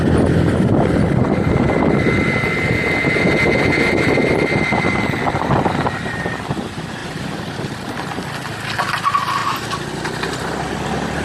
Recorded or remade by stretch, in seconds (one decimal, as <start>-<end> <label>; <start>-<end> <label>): 0.0-11.2 recorded